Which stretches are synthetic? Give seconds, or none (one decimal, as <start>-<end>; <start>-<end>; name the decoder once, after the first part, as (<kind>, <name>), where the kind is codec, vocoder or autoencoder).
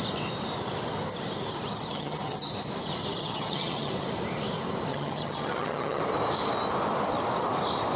1.9-2.5 (vocoder, HiFi-GAN); 3.2-3.9; 4.9-6.0